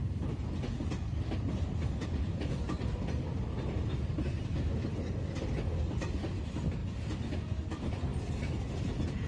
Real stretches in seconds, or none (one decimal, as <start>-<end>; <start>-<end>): 0.0-9.3